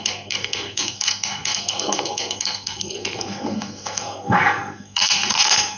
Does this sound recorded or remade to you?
remade